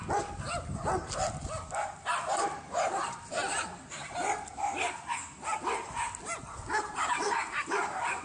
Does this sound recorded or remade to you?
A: recorded